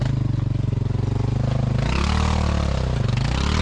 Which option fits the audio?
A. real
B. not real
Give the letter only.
A